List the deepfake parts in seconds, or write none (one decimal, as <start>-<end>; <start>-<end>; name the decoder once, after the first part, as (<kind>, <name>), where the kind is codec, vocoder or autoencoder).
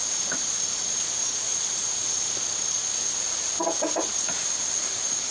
none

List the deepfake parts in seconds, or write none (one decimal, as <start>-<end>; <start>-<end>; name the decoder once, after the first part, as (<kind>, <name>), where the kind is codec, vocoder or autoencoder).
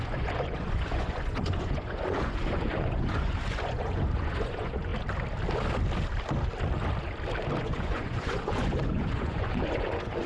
0.0-4.9 (vocoder, Vocos); 7.6-10.3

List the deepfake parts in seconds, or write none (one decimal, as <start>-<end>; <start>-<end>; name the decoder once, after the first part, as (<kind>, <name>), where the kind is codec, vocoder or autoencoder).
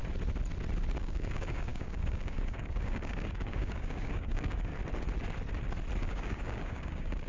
1.0-4.7 (codec, DAC); 6.0-7.3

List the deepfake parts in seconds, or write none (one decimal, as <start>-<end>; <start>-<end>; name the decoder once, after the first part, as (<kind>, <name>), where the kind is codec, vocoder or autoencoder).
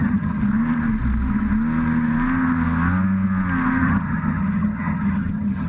0.0-0.4 (vocoder, HiFi-GAN); 3.8-5.7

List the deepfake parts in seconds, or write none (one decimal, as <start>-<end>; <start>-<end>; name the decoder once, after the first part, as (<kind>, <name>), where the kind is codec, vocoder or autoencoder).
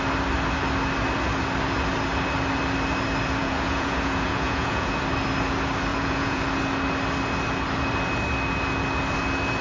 3.4-4.9 (vocoder, Vocos); 5.9-6.4